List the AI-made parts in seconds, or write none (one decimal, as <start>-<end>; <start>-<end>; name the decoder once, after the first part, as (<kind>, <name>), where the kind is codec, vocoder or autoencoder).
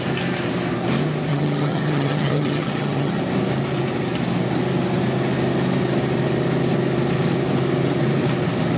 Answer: 1.3-3.2 (vocoder, HiFi-GAN)